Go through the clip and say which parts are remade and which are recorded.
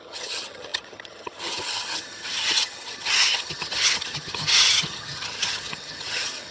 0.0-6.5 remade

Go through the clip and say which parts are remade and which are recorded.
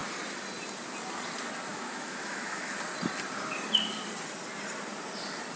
0.0-1.7 recorded; 1.7-2.7 remade; 2.7-5.6 recorded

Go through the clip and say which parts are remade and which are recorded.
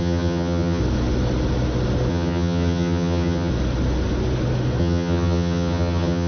0.0-0.8 remade; 0.8-2.1 recorded; 2.1-3.5 remade; 3.5-4.8 recorded; 4.8-6.3 remade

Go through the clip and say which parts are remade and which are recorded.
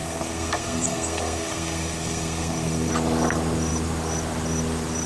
0.0-2.9 remade; 2.9-5.1 recorded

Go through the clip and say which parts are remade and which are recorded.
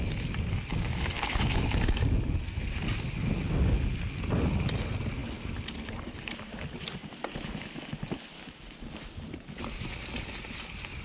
0.0-0.7 recorded; 0.7-2.1 remade; 2.1-11.0 recorded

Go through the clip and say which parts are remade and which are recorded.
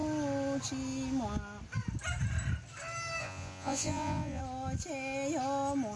0.0-3.2 recorded; 3.2-4.4 remade; 4.4-6.0 recorded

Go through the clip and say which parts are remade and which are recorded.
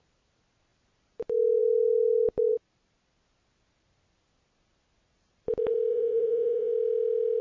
0.0-5.9 recorded; 5.9-6.7 remade; 6.7-7.4 recorded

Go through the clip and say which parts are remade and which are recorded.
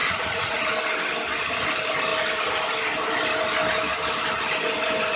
0.0-0.6 remade; 0.6-5.2 recorded